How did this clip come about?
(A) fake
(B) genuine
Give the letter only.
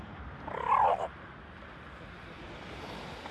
B